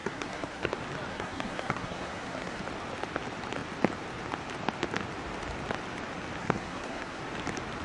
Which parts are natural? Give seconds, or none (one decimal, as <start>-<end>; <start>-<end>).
0.7-1.1; 2.6-6.4; 7.2-7.8